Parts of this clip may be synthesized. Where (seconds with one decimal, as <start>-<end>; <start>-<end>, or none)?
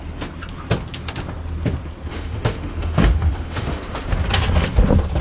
2.1-4.0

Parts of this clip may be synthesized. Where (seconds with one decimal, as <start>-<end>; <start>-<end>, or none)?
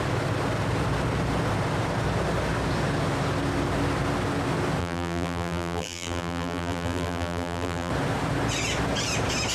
4.8-7.9